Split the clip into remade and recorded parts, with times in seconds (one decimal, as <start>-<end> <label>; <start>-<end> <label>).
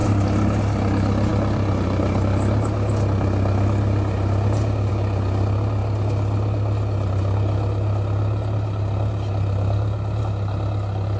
0.0-0.6 remade; 0.6-11.2 recorded